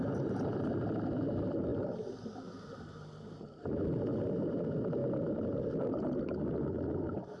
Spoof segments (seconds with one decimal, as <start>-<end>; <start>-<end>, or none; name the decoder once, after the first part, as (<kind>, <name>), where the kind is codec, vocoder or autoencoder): none